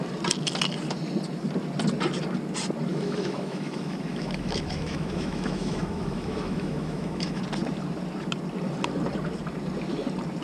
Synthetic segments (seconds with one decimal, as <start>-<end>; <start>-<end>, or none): 2.9-7.4